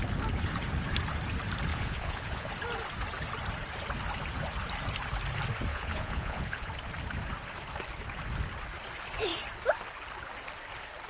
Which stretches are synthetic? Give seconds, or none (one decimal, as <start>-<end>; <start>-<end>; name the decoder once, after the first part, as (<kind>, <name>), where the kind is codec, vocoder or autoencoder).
1.7-2.5 (vocoder, Vocos); 5.7-6.7